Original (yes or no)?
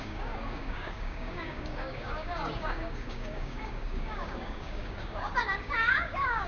no